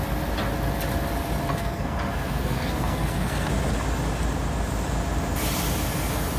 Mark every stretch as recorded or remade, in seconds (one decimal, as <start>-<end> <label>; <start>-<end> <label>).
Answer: 0.0-1.5 recorded; 1.5-3.5 remade; 3.5-6.4 recorded